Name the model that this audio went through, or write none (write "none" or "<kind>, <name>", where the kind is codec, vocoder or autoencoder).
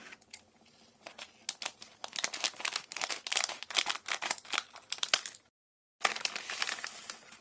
none